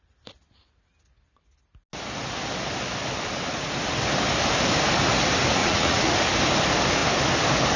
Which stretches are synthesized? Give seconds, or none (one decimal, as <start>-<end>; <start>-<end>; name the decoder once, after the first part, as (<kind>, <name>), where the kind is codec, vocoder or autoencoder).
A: 5.6-6.1 (vocoder, Vocos)